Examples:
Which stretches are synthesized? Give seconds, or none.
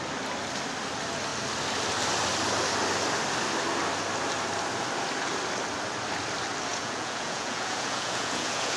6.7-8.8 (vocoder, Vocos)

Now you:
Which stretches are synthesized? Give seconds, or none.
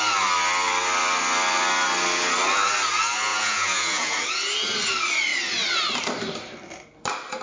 3.3-4.3 (vocoder, Vocos)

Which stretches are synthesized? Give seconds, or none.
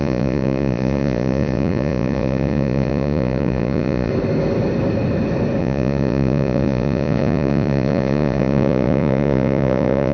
0.0-4.1 (vocoder, Vocos); 5.6-10.1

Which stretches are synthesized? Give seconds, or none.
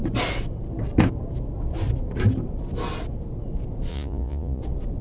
3.9-4.6 (vocoder, Vocos)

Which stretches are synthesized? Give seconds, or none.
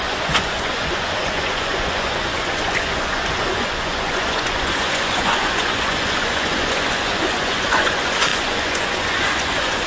0.0-9.9 (vocoder, Vocos)